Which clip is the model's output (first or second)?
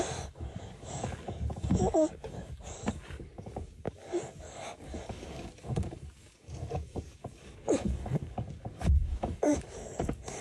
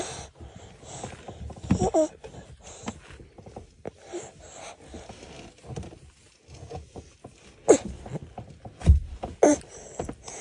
first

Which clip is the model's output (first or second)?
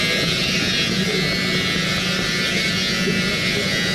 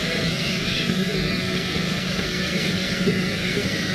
second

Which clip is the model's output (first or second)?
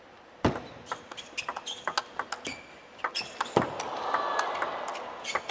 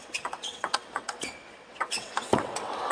second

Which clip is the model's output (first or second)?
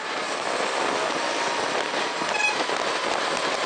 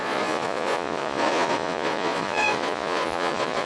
second